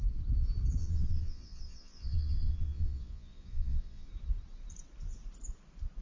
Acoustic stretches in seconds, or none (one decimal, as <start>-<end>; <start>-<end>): 0.0-0.8; 4.1-6.0